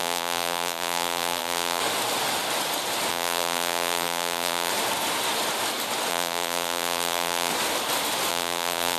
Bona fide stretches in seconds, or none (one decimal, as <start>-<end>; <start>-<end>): 1.8-3.1; 4.7-6.1; 7.5-8.3